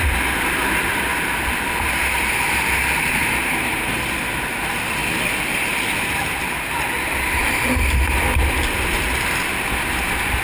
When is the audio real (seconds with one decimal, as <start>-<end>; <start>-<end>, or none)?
none